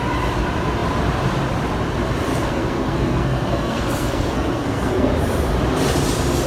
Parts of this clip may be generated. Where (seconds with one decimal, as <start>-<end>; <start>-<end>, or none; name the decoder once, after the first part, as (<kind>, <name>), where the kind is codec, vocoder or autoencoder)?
2.3-5.1 (codec, SNAC)